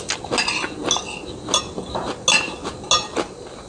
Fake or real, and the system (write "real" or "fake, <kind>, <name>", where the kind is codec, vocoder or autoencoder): real